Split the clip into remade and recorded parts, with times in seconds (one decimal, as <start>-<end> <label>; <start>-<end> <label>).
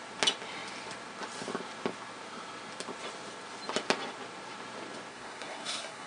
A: 0.0-5.1 recorded; 5.1-6.1 remade